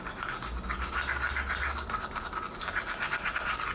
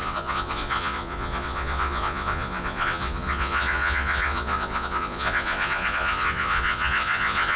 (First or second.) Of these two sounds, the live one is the first